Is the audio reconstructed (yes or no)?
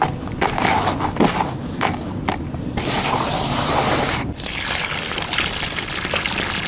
no